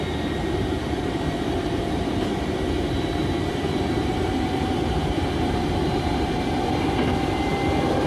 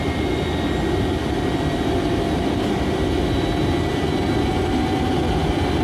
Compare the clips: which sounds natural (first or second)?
second